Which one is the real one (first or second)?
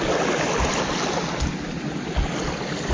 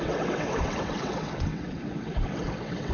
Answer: first